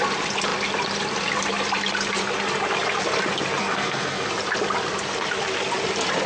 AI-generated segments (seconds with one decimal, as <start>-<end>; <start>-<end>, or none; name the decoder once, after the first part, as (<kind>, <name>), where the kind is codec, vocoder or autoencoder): 3.6-4.3 (codec, SNAC)